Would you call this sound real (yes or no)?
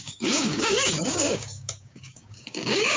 no